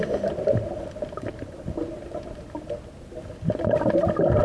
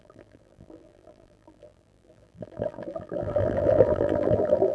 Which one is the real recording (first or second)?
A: first